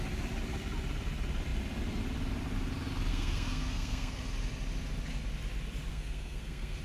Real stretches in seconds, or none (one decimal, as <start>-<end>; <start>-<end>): 0.0-3.1; 4.2-5.9

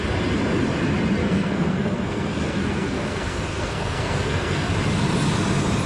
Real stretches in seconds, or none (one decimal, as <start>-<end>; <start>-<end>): 0.0-1.2; 4.7-5.9